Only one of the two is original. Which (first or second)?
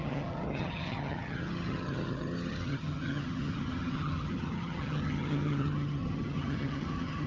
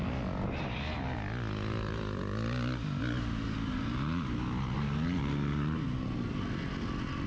second